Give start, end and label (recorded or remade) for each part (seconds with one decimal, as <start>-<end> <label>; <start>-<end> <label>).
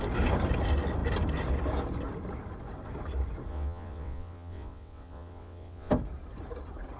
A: 0.0-3.5 recorded; 3.5-5.9 remade; 5.9-7.0 recorded